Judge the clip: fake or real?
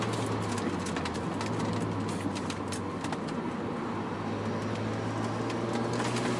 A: real